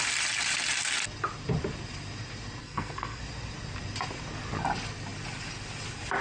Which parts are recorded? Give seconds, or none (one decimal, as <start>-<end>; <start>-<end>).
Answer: 0.0-2.6; 3.2-6.2